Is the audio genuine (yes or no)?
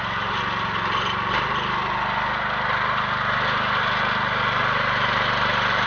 yes